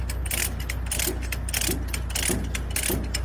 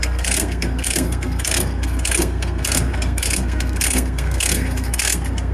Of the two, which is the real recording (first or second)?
first